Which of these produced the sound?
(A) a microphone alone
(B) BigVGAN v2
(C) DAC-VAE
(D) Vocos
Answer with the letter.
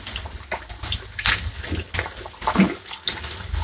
A